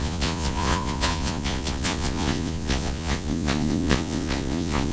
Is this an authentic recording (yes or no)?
no